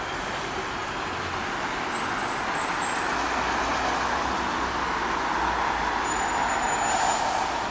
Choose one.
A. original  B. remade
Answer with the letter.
A